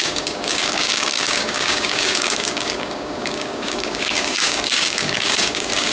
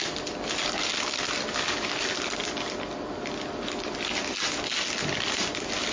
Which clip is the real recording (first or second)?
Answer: second